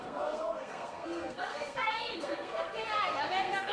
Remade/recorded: remade